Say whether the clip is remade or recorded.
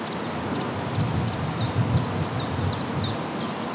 recorded